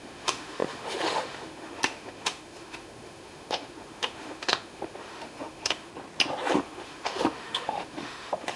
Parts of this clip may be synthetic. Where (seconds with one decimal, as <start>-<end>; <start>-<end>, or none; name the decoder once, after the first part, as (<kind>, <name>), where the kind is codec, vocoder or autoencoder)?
0.0-5.9 (autoencoder, DAC-VAE); 6.6-8.6